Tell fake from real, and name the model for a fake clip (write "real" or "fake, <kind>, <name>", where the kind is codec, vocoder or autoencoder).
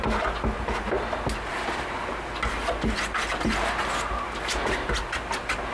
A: real